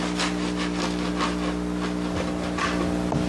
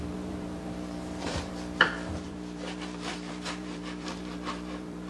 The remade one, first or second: second